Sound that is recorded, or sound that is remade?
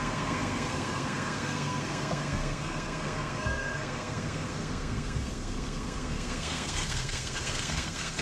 remade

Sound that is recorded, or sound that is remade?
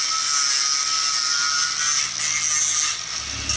recorded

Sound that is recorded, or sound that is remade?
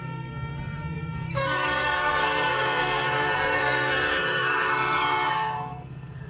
remade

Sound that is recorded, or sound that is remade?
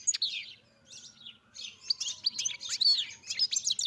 recorded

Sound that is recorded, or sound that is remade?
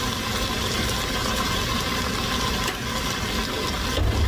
recorded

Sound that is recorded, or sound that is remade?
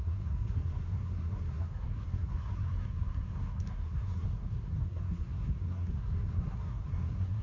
remade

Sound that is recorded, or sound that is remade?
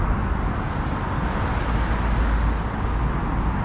recorded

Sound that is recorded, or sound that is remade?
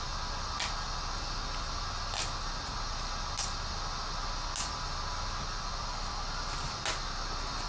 recorded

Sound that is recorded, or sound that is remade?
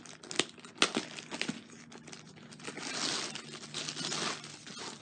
recorded